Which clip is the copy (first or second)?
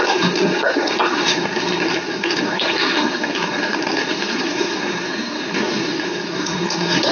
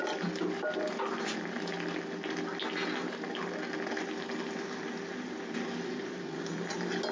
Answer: first